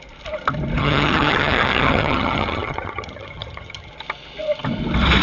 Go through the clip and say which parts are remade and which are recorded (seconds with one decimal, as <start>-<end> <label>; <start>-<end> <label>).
0.0-0.8 recorded; 0.8-3.9 remade; 3.9-5.2 recorded